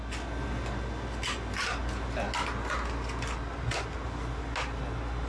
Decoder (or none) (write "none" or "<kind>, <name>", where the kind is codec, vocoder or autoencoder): none